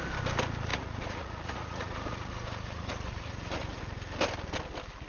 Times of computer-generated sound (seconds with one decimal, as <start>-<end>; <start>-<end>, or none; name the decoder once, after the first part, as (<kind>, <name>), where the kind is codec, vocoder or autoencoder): 0.7-3.8 (vocoder, Vocos)